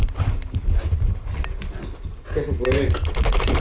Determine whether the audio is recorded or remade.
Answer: recorded